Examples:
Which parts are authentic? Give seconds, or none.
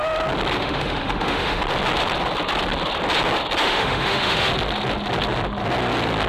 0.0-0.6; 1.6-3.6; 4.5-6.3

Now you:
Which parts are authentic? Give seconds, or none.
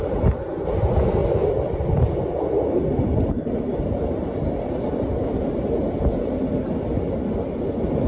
0.0-8.1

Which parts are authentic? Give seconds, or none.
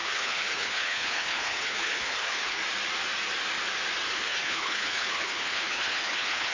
2.6-4.1